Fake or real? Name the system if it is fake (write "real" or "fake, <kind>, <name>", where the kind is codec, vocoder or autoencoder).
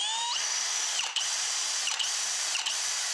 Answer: real